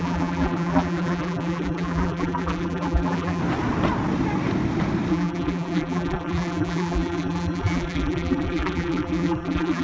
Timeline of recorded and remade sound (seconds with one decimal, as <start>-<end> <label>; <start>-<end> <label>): 0.0-3.4 remade; 3.4-5.1 recorded; 5.1-9.8 remade